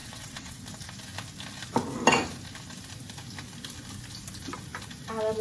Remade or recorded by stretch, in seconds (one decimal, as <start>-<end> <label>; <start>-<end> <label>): 0.0-0.6 remade; 0.6-5.4 recorded